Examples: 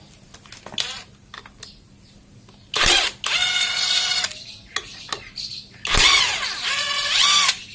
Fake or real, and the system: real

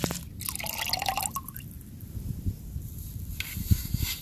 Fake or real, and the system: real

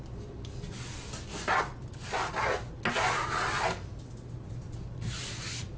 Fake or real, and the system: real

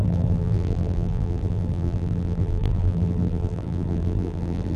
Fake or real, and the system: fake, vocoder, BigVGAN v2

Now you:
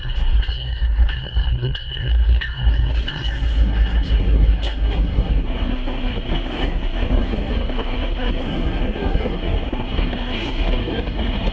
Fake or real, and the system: fake, codec, SNAC